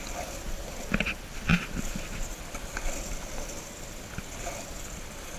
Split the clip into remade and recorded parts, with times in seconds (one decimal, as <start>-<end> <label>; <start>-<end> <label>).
0.0-5.4 recorded

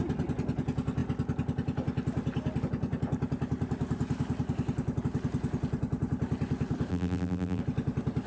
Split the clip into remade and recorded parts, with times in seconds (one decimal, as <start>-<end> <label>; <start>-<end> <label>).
0.0-6.9 recorded; 6.9-7.6 remade; 7.6-8.3 recorded

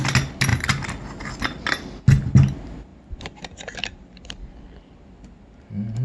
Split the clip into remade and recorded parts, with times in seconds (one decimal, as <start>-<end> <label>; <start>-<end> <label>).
0.0-2.9 recorded; 2.9-4.8 remade; 4.8-6.0 recorded